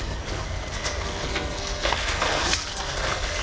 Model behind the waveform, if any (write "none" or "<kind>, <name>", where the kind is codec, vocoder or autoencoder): codec, SNAC